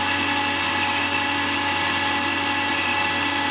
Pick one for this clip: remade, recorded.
recorded